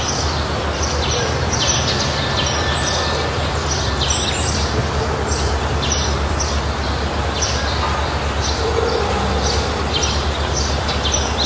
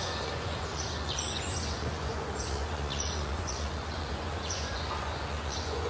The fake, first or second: second